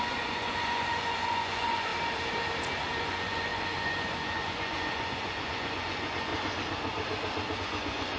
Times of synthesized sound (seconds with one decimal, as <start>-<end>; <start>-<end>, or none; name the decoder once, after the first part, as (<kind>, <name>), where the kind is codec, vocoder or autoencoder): 0.0-1.9 (vocoder, Vocos); 3.0-6.3; 7.6-8.2